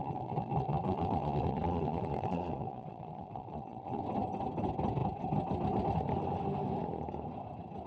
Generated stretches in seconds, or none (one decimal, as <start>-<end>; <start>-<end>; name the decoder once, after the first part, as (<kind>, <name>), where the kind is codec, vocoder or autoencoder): 0.0-4.0 (vocoder, Vocos)